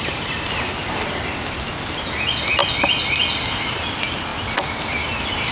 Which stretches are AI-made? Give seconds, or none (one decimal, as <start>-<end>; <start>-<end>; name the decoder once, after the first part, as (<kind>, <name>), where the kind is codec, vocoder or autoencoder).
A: none